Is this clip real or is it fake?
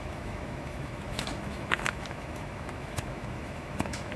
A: fake